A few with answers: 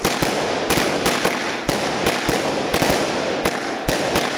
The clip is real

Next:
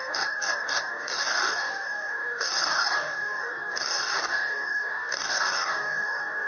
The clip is fake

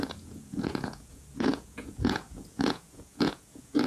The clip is fake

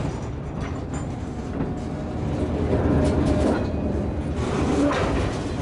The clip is real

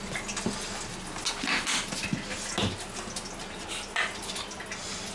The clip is real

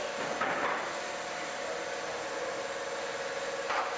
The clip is real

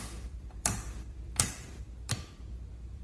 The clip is fake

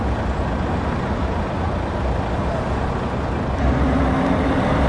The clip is real